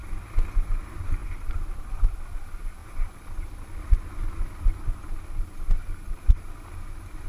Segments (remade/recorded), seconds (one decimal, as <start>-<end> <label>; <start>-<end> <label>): 0.0-1.2 recorded; 1.2-1.9 remade; 1.9-7.3 recorded